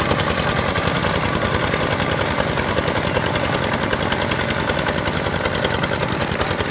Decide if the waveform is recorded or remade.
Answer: recorded